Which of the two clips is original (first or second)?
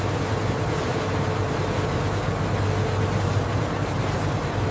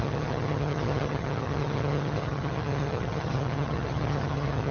first